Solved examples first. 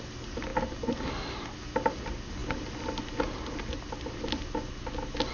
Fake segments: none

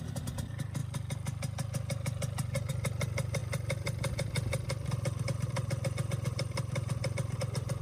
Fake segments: none